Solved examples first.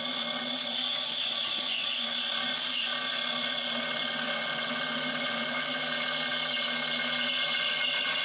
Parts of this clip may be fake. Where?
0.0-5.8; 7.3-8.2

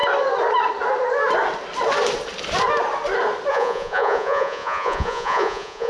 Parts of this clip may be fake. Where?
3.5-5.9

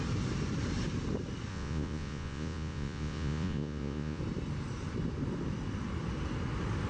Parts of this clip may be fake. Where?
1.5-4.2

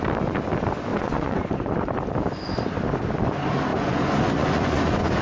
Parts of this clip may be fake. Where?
0.9-1.9; 3.7-5.2

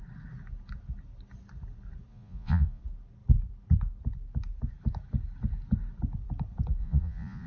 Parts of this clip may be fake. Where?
2.1-2.8; 6.8-7.5